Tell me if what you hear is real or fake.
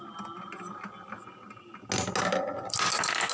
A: real